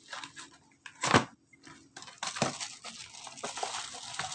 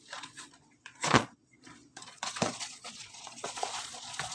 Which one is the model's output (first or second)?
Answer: second